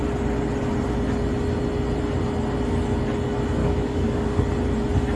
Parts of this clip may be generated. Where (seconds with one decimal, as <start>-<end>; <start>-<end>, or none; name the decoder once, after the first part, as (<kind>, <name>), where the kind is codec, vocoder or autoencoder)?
3.6-4.4 (codec, DAC)